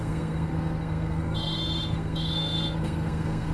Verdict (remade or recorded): remade